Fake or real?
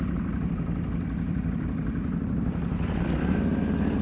real